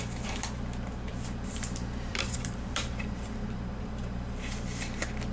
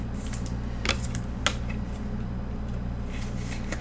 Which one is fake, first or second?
first